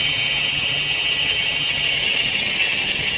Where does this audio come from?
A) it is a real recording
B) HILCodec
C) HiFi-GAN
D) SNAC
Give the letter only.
C